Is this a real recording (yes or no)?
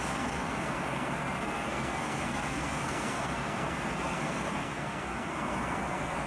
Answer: no